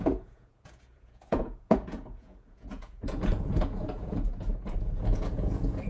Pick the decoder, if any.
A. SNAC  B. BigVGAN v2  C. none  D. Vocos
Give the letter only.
D